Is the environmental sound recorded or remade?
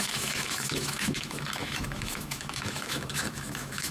remade